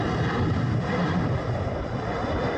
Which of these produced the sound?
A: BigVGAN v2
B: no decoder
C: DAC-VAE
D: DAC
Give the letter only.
B